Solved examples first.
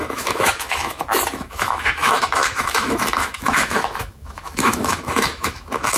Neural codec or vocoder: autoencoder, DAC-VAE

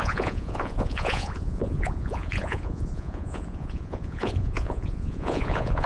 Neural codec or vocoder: vocoder, Vocos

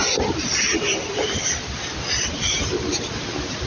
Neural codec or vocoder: none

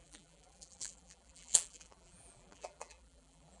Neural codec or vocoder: vocoder, BigVGAN v2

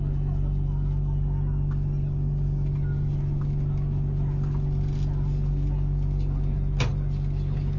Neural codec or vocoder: none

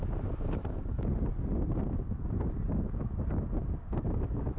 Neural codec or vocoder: none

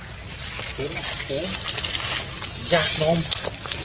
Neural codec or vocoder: none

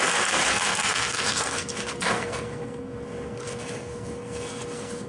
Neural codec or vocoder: codec, SNAC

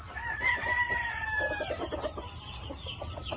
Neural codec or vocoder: none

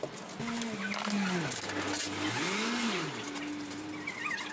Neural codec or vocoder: none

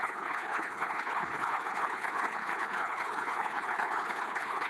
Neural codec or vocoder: codec, HILCodec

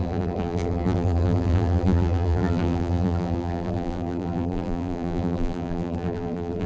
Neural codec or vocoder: vocoder, BigVGAN v2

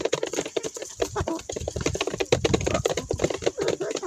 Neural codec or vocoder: none